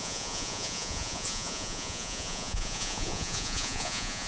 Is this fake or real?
fake